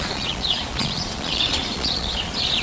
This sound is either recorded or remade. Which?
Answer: remade